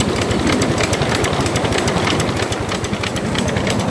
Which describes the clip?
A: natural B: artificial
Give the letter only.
A